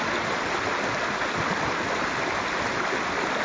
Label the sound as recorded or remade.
recorded